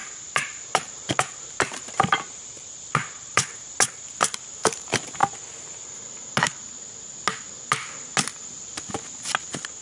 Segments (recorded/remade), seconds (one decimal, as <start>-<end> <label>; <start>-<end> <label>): 0.0-5.2 remade; 5.2-8.9 recorded; 8.9-9.8 remade